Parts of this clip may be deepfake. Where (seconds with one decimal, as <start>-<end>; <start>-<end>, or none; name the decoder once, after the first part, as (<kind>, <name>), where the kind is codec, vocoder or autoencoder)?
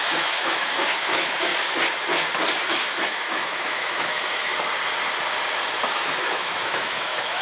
0.0-1.5 (autoencoder, DAC-VAE); 2.7-4.5; 5.9-7.4